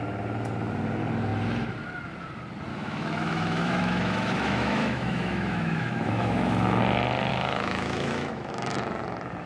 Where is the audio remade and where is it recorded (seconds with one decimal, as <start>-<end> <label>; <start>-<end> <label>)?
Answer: 0.0-2.7 recorded; 2.7-6.8 remade; 6.8-7.3 recorded; 7.3-8.5 remade; 8.5-9.5 recorded